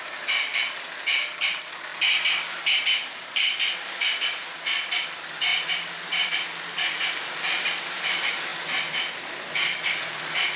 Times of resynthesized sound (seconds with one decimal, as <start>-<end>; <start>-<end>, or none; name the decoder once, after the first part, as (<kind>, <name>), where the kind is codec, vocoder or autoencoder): 0.0-1.9 (vocoder, BigVGAN v2); 2.8-8.5; 9.6-10.6